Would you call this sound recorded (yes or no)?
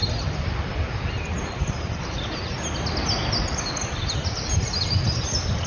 yes